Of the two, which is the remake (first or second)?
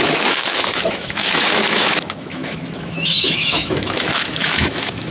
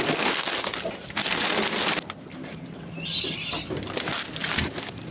first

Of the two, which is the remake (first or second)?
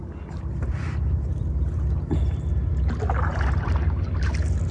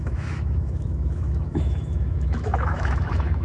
second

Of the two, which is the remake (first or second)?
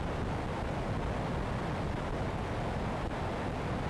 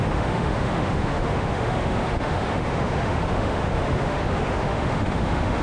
second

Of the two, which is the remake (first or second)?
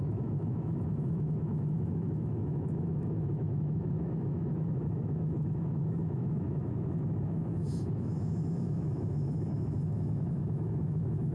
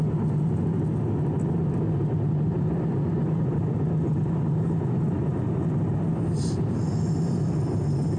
first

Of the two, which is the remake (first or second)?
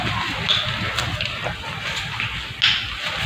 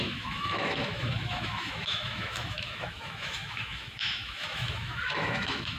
second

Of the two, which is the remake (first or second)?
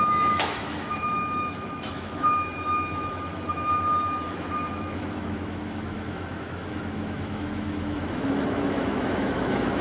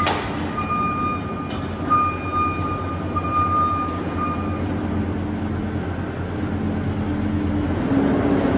first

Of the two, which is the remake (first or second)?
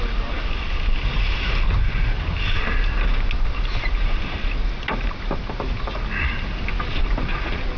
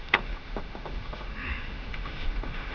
second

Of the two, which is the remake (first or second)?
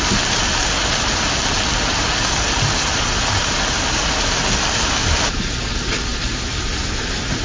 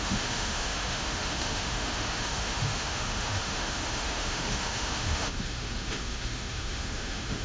second